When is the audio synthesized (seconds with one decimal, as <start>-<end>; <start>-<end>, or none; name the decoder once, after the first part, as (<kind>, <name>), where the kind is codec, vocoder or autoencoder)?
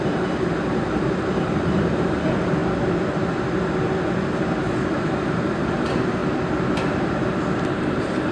0.0-2.6 (vocoder, BigVGAN v2); 4.9-6.2; 7.6-8.3